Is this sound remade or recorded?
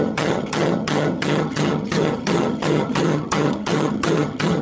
remade